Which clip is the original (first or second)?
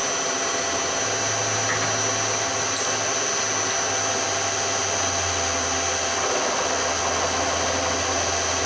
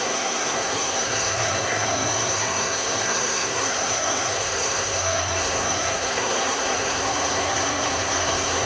first